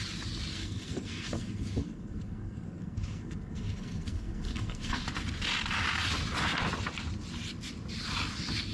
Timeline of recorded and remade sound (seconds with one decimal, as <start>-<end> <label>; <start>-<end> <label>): 0.0-0.5 recorded; 0.5-5.0 remade; 5.0-8.7 recorded

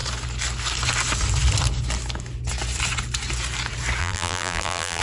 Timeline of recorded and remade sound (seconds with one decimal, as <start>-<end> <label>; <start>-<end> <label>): 0.0-4.0 recorded; 4.0-5.0 remade

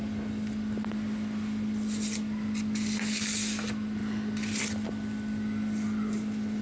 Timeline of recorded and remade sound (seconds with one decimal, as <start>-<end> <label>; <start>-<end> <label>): 0.0-6.6 recorded

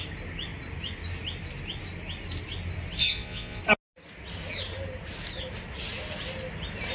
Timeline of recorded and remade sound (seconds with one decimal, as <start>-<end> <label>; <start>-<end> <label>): 0.0-3.0 recorded; 3.0-3.6 remade; 3.6-6.9 recorded

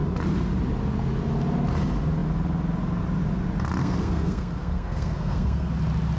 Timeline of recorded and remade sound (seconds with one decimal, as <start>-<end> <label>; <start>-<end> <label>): 0.0-3.8 recorded; 3.8-5.7 remade; 5.7-6.2 recorded

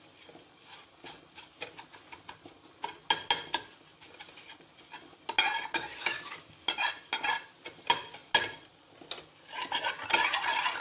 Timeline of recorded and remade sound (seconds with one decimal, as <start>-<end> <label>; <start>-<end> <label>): 0.0-5.9 recorded; 5.9-6.5 remade; 6.5-10.8 recorded